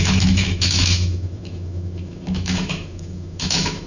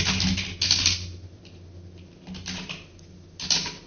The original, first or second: second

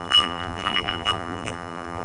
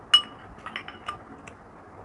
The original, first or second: second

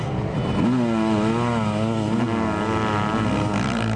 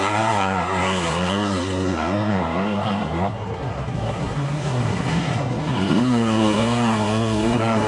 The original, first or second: first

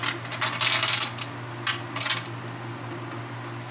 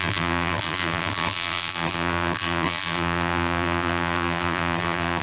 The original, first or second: first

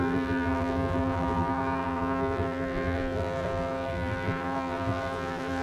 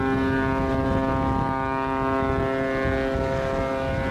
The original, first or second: second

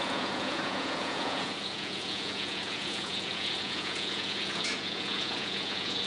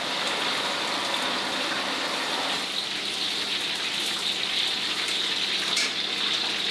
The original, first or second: second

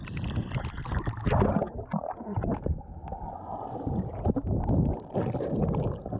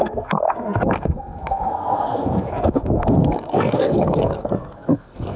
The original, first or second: first